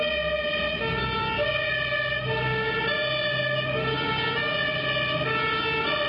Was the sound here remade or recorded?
recorded